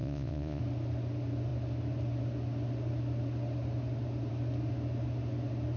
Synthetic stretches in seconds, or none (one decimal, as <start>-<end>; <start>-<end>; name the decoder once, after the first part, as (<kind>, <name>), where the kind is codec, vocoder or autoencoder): 0.0-0.6 (vocoder, Vocos)